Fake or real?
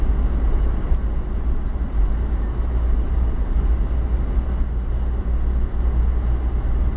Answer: real